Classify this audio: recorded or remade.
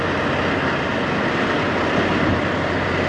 recorded